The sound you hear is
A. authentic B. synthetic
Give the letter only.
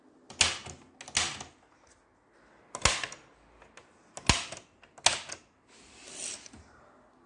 A